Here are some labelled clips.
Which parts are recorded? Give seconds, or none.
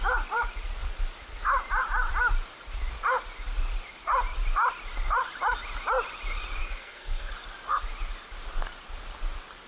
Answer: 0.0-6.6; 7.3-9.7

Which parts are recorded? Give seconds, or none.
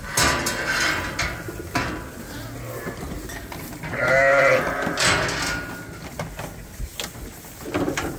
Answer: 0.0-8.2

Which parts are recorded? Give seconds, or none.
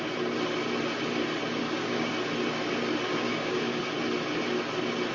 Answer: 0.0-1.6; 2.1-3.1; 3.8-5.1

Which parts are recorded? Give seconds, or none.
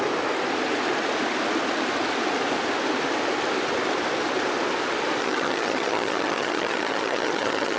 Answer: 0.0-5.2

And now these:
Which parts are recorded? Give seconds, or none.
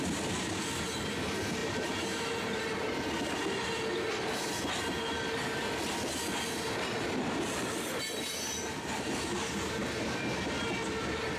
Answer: 0.0-1.6; 2.6-11.4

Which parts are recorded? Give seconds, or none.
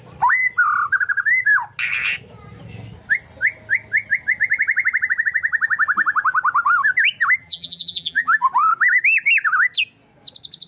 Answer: 0.0-7.4; 8.5-10.7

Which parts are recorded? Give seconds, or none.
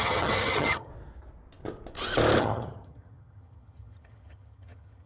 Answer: 0.9-2.4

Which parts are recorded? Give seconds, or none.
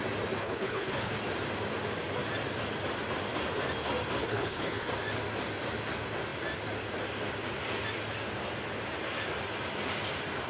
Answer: 0.0-0.4; 1.1-4.2; 4.9-10.5